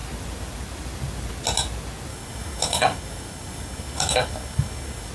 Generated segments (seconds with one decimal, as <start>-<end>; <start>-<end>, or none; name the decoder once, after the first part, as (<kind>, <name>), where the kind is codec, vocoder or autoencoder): 2.1-5.1 (codec, DAC)